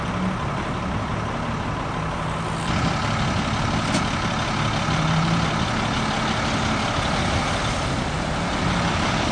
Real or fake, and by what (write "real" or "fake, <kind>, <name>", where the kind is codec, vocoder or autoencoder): real